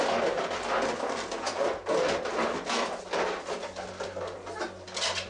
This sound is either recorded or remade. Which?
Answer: recorded